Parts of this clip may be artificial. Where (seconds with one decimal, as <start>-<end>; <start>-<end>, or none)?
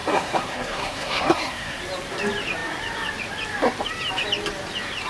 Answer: 0.0-1.8